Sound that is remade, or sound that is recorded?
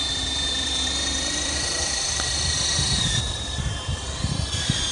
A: remade